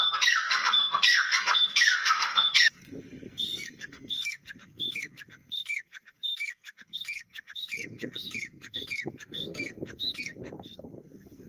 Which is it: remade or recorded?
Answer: remade